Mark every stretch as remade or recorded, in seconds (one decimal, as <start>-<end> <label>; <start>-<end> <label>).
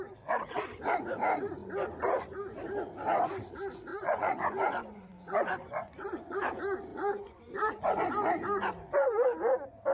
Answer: 0.0-3.9 recorded; 3.9-6.4 remade; 6.4-6.9 recorded; 6.9-7.8 remade; 7.8-9.9 recorded